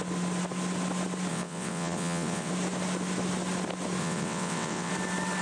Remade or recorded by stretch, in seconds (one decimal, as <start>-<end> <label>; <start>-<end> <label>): 0.0-1.3 recorded; 1.3-2.5 remade; 2.5-4.0 recorded; 4.0-4.9 remade; 4.9-5.4 recorded